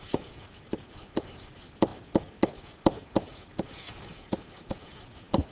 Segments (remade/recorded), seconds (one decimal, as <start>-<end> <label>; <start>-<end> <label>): 0.0-5.5 recorded